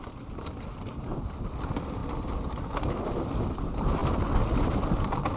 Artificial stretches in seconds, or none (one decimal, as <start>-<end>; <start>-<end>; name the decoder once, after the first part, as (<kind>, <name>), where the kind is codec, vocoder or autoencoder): none